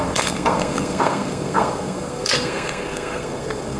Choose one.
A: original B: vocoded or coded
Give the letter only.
B